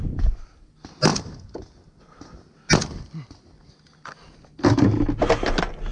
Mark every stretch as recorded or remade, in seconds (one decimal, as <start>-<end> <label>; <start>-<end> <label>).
0.0-5.9 recorded